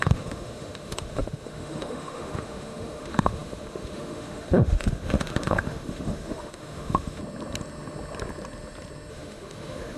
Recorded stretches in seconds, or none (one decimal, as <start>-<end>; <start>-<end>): 7.2-9.1